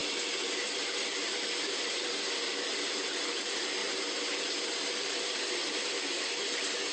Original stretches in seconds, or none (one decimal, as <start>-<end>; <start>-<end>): 3.8-4.5